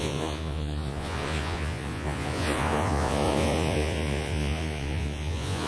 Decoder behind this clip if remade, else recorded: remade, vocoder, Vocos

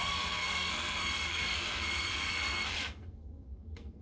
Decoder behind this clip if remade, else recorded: remade, codec, SNAC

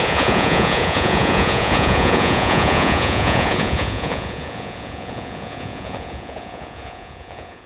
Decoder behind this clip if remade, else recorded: remade, vocoder, Vocos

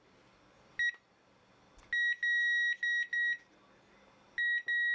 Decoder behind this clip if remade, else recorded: recorded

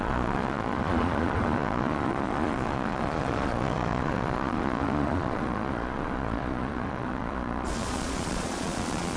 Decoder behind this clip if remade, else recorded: remade, vocoder, Vocos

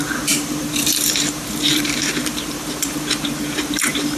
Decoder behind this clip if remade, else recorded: remade, vocoder, BigVGAN v2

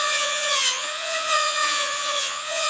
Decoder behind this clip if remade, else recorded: remade, vocoder, Vocos